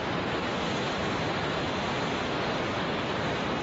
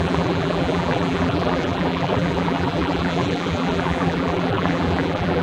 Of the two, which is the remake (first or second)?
second